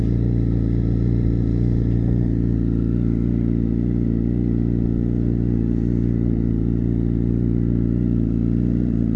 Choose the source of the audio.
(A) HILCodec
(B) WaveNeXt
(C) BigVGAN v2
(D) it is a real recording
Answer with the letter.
D